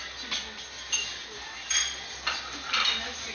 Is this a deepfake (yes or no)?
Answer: no